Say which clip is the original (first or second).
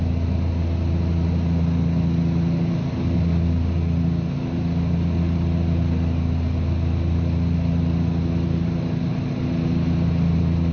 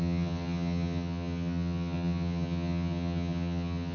first